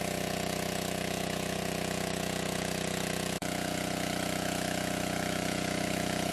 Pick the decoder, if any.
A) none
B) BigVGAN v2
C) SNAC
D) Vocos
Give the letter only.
D